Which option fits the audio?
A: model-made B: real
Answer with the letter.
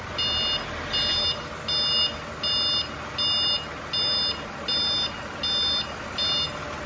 B